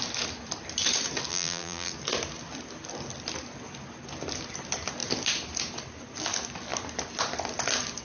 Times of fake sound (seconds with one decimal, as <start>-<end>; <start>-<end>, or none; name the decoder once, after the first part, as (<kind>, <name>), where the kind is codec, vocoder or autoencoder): 1.3-1.9 (vocoder, BigVGAN v2)